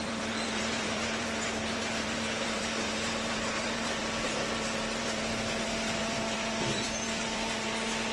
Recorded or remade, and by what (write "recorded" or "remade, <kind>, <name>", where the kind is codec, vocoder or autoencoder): remade, vocoder, BigVGAN v2